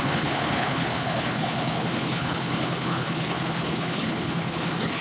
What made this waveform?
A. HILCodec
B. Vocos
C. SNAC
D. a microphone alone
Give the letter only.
A